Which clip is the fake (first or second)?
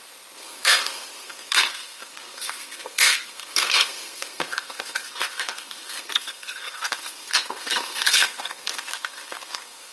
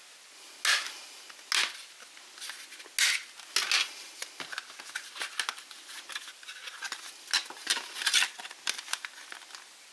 first